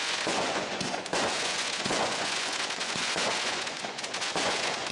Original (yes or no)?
no